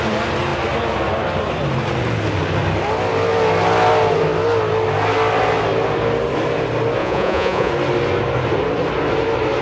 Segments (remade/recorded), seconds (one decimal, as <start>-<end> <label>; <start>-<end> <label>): 0.0-7.0 recorded; 7.0-7.7 remade; 7.7-9.6 recorded